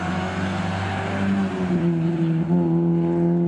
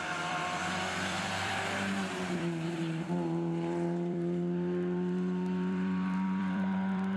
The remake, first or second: second